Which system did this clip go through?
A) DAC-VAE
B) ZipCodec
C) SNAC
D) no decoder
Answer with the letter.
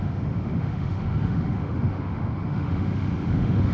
A